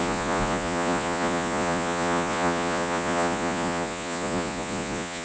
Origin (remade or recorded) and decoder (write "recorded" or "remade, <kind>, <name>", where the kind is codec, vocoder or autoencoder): remade, vocoder, Vocos